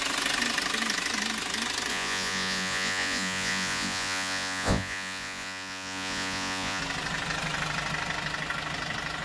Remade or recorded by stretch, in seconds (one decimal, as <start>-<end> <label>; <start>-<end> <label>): 0.0-1.9 recorded; 1.9-6.8 remade; 6.8-9.2 recorded